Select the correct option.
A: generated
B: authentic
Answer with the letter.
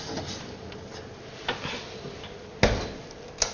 B